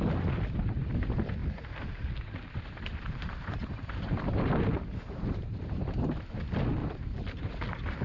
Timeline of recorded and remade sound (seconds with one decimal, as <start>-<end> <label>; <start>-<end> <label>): 0.0-1.4 recorded; 1.4-6.2 remade; 6.2-6.8 recorded; 6.8-7.5 remade; 7.5-8.0 recorded